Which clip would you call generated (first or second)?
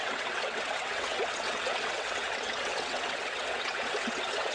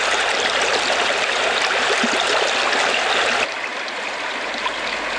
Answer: first